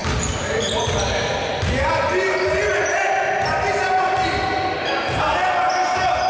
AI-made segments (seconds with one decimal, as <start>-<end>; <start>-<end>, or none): none